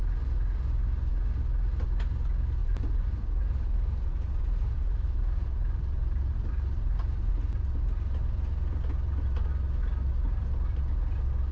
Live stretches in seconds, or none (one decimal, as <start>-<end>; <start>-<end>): 0.0-2.6; 7.3-11.5